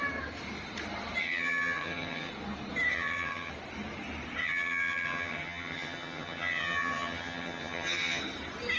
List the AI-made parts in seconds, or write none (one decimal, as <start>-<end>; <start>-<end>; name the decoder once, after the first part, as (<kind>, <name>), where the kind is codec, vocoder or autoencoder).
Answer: 1.2-2.3 (vocoder, HiFi-GAN); 2.9-3.5; 4.4-8.2